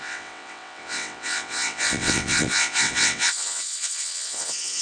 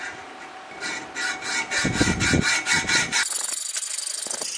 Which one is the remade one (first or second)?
first